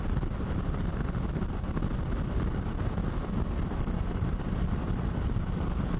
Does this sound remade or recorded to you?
recorded